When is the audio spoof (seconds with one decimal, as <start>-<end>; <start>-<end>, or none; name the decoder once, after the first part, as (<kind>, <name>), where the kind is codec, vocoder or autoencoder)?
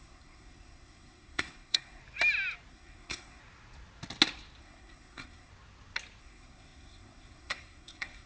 0.0-2.0 (codec, SNAC); 2.7-3.4; 4.6-5.5; 6.2-8.3